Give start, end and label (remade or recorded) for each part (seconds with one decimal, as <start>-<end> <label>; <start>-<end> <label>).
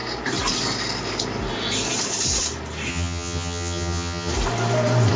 0.0-2.9 recorded; 2.9-4.3 remade; 4.3-5.2 recorded